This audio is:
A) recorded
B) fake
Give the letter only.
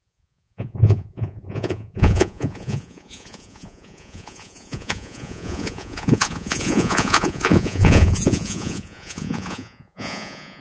B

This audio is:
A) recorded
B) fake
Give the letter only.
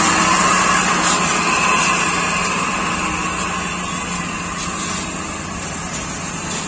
A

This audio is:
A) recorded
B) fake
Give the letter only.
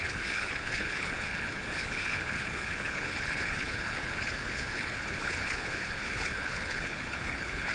B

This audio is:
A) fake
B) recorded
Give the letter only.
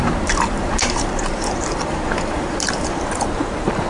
A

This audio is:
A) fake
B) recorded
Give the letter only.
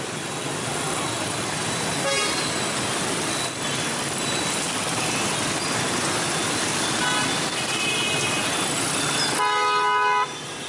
B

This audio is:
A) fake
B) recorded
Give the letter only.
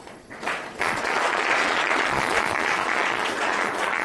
A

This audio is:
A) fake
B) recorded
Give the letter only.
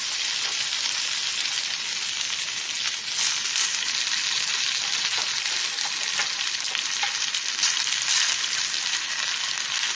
B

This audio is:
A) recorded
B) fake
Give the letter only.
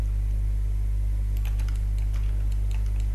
A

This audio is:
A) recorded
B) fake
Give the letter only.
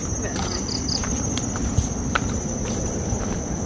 B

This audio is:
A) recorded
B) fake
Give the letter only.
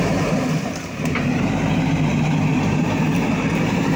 B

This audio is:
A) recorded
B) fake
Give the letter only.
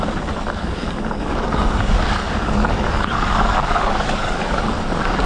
B